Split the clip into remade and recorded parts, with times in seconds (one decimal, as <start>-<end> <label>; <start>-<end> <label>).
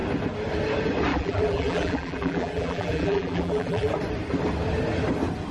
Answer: 0.0-1.1 recorded; 1.1-3.9 remade; 3.9-5.5 recorded